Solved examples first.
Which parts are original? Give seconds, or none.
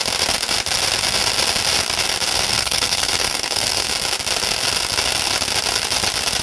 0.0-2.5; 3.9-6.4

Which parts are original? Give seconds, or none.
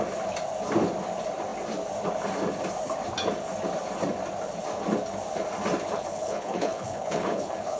0.0-5.9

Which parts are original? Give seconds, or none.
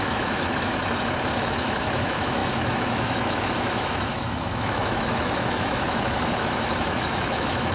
0.8-1.4